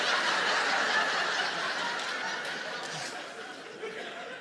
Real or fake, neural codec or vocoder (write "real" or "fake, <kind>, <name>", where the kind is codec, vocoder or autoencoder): real